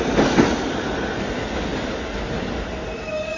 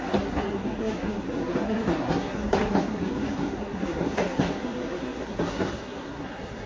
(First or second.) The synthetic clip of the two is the second